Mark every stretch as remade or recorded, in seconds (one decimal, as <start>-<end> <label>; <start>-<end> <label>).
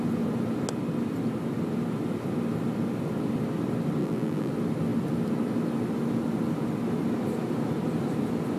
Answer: 0.0-4.0 recorded; 4.0-4.5 remade; 4.5-8.6 recorded